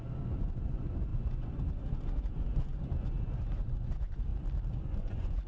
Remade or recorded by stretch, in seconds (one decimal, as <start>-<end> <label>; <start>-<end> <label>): 0.0-4.3 remade; 4.3-4.8 recorded; 4.8-5.5 remade